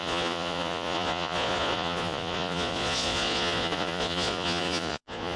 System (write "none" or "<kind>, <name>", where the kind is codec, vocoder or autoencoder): vocoder, Vocos